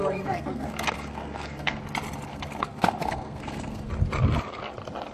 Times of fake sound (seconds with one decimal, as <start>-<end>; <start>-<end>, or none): 0.0-1.8; 2.3-3.9